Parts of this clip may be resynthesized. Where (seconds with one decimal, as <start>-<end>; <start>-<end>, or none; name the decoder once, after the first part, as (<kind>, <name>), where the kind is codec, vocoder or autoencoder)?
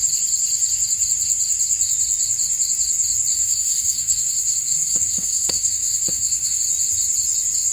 3.3-6.6 (codec, SNAC)